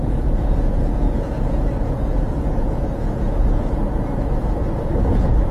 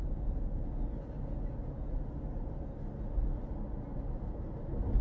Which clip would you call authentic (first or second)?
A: second